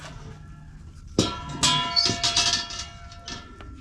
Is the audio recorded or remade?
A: recorded